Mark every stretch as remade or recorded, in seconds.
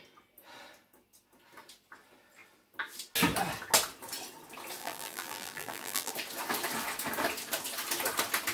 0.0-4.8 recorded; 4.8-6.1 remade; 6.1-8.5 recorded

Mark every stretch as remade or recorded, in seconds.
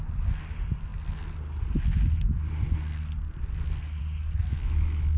0.0-4.5 recorded; 4.5-5.2 remade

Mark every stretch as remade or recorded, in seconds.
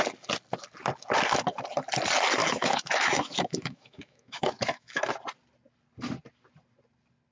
0.0-2.4 recorded; 2.4-5.1 remade; 5.1-7.3 recorded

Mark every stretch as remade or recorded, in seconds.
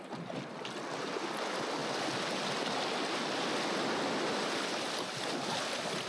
0.0-6.1 recorded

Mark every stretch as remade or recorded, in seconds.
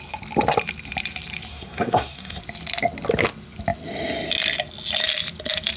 0.0-1.5 recorded; 1.5-2.4 remade; 2.4-5.8 recorded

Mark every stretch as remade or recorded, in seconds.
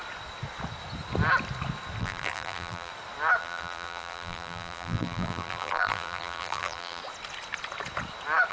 0.0-2.0 recorded; 2.0-2.9 remade; 2.9-3.4 recorded; 3.4-7.0 remade; 7.0-8.5 recorded